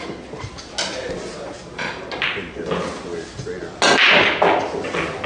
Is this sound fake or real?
real